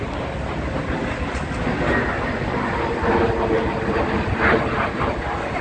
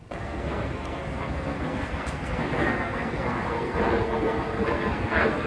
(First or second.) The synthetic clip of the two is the second